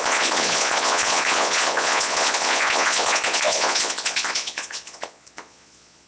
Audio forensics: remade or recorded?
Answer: remade